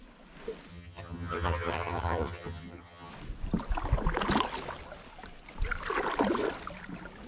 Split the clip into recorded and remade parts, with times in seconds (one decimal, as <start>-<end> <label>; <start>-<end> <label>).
0.0-0.7 recorded; 0.7-3.1 remade; 3.1-7.3 recorded